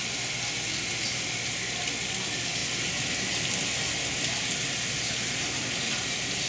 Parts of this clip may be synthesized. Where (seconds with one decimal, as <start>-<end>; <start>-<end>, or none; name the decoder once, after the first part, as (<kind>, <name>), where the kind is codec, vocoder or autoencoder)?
none